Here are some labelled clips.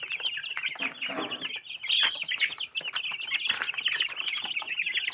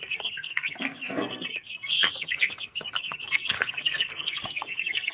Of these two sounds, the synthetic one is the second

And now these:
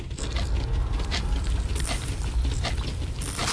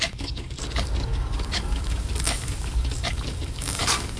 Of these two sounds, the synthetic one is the second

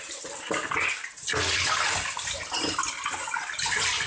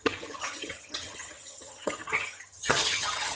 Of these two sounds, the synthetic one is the second